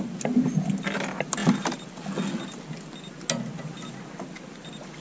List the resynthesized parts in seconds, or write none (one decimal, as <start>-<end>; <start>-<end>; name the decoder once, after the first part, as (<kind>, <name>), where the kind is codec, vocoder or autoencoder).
none